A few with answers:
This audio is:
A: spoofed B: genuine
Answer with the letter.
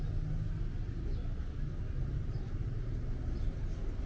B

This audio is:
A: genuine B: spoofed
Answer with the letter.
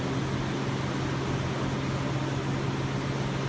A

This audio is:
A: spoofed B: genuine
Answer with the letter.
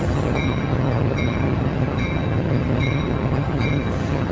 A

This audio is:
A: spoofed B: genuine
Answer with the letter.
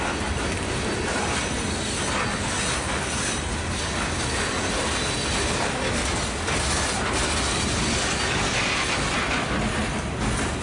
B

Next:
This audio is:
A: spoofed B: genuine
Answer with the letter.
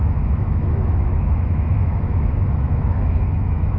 A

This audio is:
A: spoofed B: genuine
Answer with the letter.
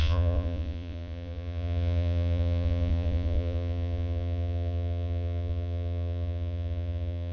A